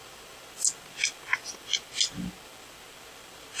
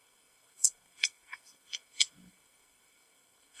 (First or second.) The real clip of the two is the first